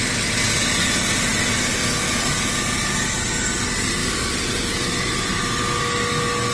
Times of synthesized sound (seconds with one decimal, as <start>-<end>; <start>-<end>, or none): 1.7-2.3; 4.0-5.8